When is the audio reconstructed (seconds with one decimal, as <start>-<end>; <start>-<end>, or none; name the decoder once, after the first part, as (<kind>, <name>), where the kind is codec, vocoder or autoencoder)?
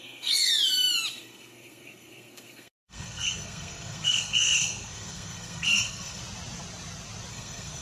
0.0-0.5 (codec, SNAC); 1.1-6.2; 7.3-7.8